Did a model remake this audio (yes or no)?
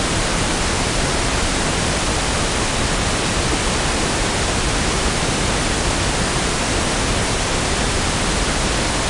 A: no